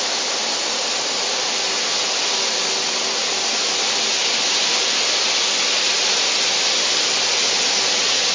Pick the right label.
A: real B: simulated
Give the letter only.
A